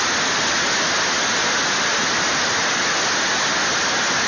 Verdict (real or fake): real